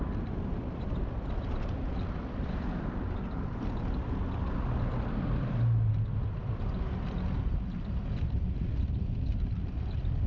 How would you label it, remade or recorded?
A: recorded